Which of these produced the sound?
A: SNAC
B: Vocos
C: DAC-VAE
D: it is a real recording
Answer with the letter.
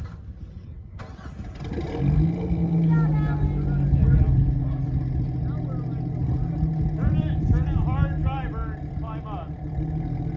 D